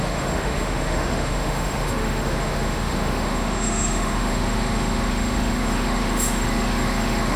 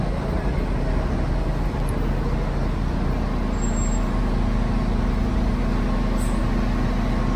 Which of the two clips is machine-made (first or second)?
first